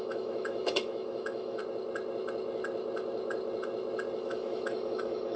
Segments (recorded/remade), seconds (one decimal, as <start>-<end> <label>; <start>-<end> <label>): 0.0-1.6 remade; 1.6-4.2 recorded; 4.2-5.4 remade